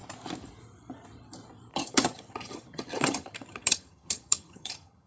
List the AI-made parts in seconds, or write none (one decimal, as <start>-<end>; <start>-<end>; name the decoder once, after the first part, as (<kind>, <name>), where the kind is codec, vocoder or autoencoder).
1.7-5.1 (vocoder, HiFi-GAN)